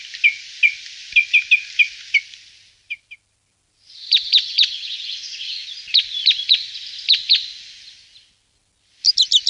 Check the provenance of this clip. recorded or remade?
recorded